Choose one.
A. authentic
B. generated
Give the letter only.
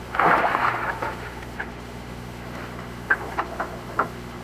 B